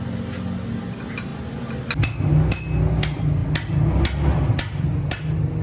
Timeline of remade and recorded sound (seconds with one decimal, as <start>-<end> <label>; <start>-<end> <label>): 0.0-5.6 recorded